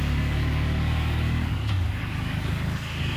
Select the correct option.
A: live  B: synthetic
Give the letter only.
B